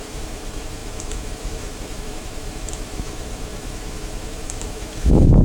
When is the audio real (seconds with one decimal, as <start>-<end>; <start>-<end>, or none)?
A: none